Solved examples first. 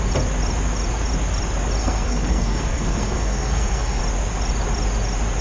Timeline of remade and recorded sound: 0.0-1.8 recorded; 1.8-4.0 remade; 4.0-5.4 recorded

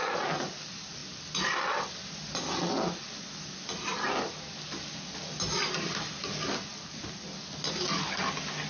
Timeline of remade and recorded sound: 0.0-8.7 recorded